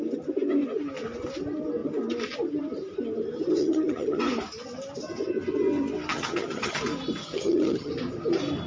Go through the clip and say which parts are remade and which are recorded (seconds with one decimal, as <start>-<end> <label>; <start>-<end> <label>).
0.0-3.6 recorded; 3.6-4.2 remade; 4.2-6.1 recorded; 6.1-6.8 remade; 6.8-7.2 recorded; 7.2-7.9 remade; 7.9-8.7 recorded

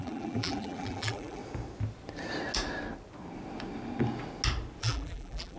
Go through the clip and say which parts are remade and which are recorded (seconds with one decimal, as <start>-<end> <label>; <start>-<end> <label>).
0.0-1.4 remade; 1.4-4.8 recorded; 4.8-5.6 remade